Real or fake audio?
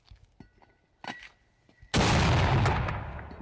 real